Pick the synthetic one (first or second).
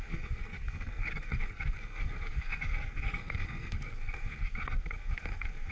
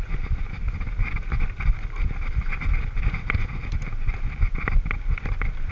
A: first